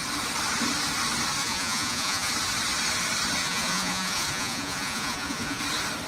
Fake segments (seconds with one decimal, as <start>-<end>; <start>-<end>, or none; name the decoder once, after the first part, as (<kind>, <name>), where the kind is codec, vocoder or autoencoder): 1.4-2.3 (vocoder, Vocos); 3.4-5.6